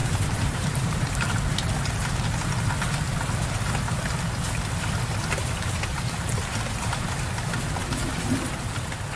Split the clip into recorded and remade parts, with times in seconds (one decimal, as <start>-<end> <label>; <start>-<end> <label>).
0.0-1.1 remade; 1.1-9.2 recorded